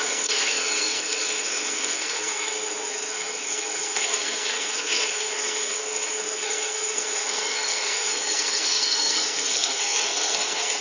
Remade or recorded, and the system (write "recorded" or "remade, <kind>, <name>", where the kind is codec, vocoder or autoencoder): remade, codec, SNAC